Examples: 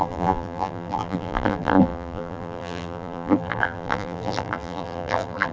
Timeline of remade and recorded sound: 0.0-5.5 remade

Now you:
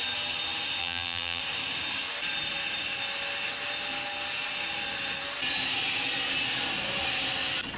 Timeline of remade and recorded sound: 0.0-0.8 recorded; 0.8-1.4 remade; 1.4-7.8 recorded

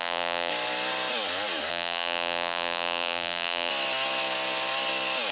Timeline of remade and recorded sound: 0.0-0.5 remade; 0.5-1.7 recorded; 1.7-3.7 remade; 3.7-5.3 recorded

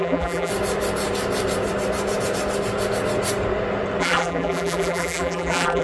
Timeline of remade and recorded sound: 0.0-0.5 remade; 0.5-4.0 recorded; 4.0-5.8 remade